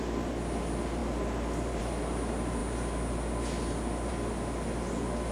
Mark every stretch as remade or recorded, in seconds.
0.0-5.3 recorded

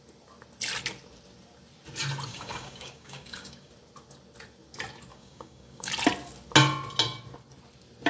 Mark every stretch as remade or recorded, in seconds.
0.0-2.3 recorded; 2.3-3.7 remade; 3.7-5.1 recorded; 5.1-5.9 remade; 5.9-8.1 recorded

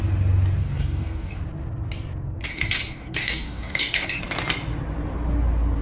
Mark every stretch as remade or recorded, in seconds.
0.0-0.6 recorded; 0.6-1.4 remade; 1.4-2.5 recorded; 2.5-4.2 remade; 4.2-5.8 recorded

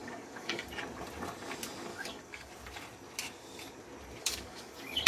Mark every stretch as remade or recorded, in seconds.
0.0-0.7 remade; 0.7-1.9 recorded; 1.9-2.5 remade; 2.5-4.2 recorded; 4.2-5.1 remade

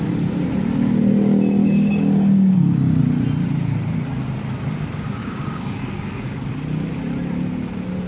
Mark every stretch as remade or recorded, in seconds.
0.0-1.6 recorded; 1.6-3.0 remade; 3.0-5.2 recorded; 5.2-6.5 remade; 6.5-8.1 recorded

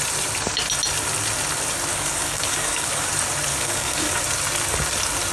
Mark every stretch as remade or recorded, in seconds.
0.0-1.9 recorded; 1.9-3.1 remade; 3.1-3.5 recorded; 3.5-4.2 remade; 4.2-5.3 recorded

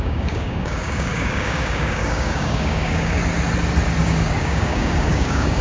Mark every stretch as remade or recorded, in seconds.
0.0-3.2 remade; 3.2-4.0 recorded; 4.0-5.6 remade